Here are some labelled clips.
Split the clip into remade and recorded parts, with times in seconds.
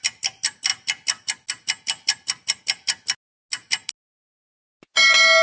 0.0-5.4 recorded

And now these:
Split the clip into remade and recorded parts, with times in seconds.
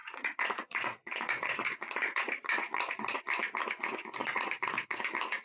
0.0-3.2 remade; 3.2-4.2 recorded; 4.2-5.0 remade; 5.0-5.4 recorded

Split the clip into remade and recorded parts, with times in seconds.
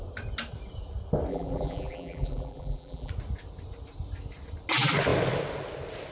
0.0-1.3 recorded; 1.3-3.1 remade; 3.1-6.1 recorded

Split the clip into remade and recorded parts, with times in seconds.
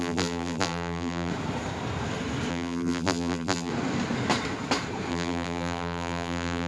0.0-1.3 remade; 1.3-2.5 recorded; 2.5-3.7 remade; 3.7-5.1 recorded; 5.1-6.7 remade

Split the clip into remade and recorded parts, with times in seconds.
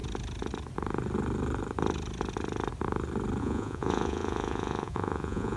0.0-3.4 recorded; 3.4-5.6 remade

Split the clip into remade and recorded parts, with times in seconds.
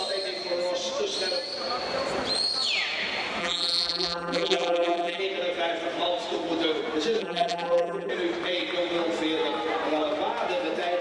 0.0-3.4 recorded; 3.4-5.2 remade; 5.2-7.2 recorded; 7.2-8.1 remade; 8.1-11.0 recorded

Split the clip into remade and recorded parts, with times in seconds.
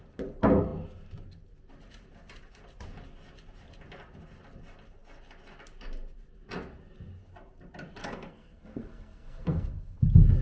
0.0-8.0 recorded; 8.0-10.0 remade; 10.0-10.4 recorded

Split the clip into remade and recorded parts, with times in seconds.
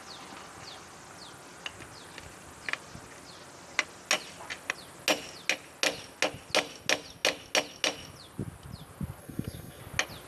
0.0-9.2 recorded; 9.2-9.8 remade; 9.8-10.3 recorded